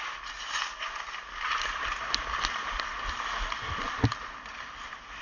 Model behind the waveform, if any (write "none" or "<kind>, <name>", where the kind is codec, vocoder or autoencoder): none